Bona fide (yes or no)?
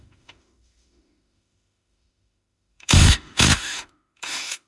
no